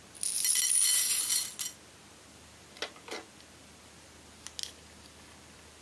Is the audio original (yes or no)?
yes